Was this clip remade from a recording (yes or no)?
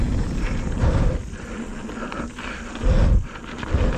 no